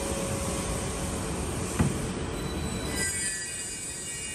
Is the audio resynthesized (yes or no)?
no